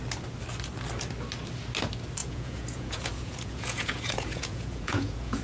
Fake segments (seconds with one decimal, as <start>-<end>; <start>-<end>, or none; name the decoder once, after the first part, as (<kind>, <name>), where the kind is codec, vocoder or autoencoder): 2.2-5.4 (vocoder, Vocos)

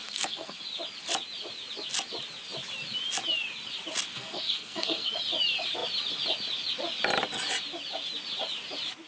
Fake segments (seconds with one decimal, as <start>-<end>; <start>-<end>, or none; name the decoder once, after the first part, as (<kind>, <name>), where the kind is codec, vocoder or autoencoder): 0.0-0.6 (codec, SNAC); 4.1-5.1

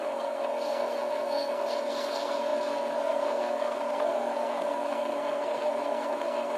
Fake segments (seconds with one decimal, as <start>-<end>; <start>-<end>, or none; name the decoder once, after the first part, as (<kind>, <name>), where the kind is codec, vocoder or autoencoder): 0.0-6.6 (codec, SNAC)

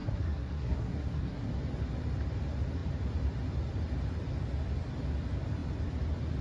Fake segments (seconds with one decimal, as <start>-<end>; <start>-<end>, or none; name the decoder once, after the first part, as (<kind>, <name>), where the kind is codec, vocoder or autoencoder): 0.0-1.5 (codec, SNAC)

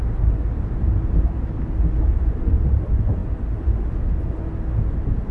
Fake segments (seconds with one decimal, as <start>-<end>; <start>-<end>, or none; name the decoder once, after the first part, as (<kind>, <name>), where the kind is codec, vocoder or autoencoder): none

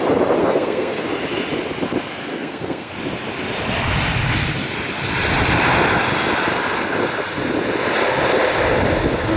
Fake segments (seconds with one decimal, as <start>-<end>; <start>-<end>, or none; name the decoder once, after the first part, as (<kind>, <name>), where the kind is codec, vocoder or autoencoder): 0.4-1.1 (codec, SNAC); 2.3-2.9

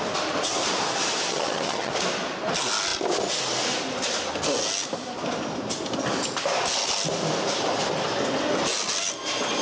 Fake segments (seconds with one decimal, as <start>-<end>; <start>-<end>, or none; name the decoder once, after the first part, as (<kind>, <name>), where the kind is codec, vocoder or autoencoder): 1.3-1.9 (vocoder, HiFi-GAN)